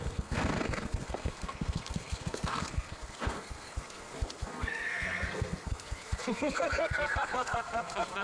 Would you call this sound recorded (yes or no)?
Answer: no